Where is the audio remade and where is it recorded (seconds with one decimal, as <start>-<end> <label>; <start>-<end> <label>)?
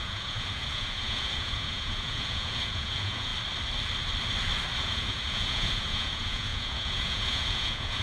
0.0-3.3 remade; 3.3-4.8 recorded; 4.8-8.0 remade